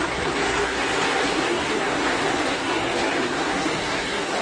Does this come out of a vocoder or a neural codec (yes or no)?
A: yes